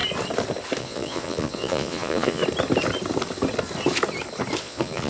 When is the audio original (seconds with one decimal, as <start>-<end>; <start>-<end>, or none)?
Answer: 0.0-0.8; 2.4-4.6